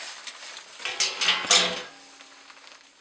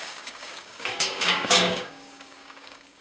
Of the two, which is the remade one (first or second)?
second